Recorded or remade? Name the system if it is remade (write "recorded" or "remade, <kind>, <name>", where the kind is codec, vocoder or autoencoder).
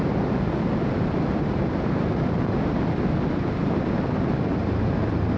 recorded